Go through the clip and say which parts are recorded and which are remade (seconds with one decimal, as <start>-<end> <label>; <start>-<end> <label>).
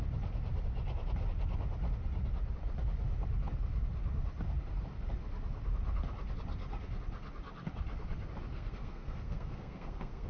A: 0.0-8.5 recorded; 8.5-10.3 remade